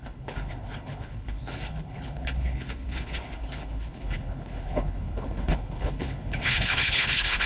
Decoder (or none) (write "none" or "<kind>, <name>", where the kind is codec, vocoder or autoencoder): codec, HILCodec